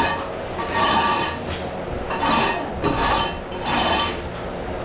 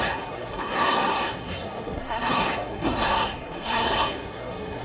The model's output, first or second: second